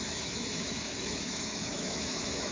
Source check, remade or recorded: remade